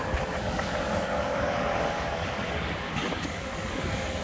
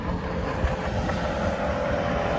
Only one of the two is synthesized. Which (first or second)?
first